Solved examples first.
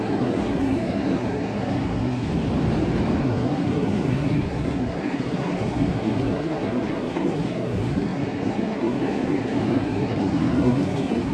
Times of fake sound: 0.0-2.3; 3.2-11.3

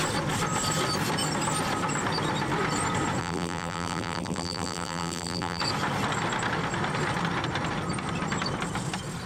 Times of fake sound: 3.2-5.6

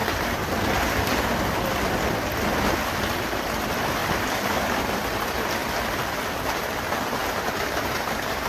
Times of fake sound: 4.0-4.8; 5.6-6.2